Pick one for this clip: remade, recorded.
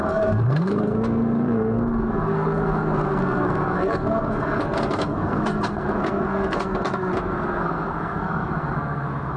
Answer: remade